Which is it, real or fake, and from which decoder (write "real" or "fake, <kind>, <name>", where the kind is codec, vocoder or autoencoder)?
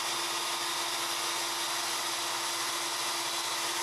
real